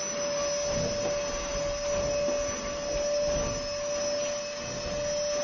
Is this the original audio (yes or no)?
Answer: yes